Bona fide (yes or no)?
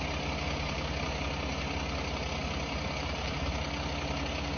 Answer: yes